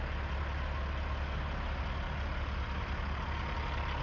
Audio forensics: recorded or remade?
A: recorded